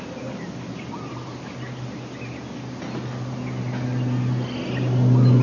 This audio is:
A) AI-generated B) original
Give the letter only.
B